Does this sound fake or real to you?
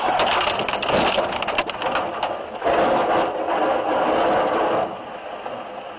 real